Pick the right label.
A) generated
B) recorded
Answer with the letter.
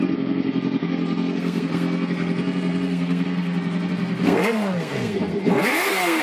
A